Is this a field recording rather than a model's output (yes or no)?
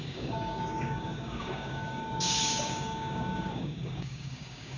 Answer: no